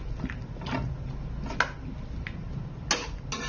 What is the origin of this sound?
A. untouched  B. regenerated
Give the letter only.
A